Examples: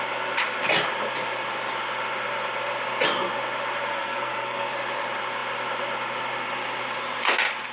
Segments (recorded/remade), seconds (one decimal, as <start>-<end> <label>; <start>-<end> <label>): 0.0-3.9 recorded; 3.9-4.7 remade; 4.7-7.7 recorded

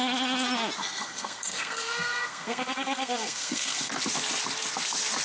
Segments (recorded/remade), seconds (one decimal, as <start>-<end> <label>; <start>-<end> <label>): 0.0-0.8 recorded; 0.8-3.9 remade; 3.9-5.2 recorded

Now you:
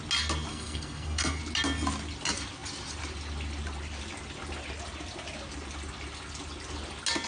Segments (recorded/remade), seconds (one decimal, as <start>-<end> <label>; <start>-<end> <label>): 0.0-0.5 recorded; 0.5-1.4 remade; 1.4-7.3 recorded